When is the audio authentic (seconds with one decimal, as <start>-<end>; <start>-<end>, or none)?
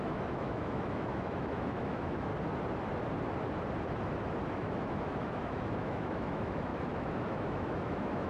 2.3-4.5